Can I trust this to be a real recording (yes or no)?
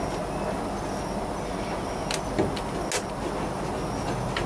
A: yes